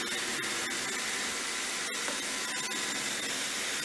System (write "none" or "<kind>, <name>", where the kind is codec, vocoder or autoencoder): none